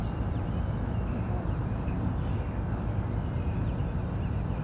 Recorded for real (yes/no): yes